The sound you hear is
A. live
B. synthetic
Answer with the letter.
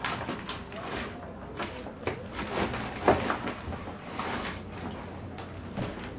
A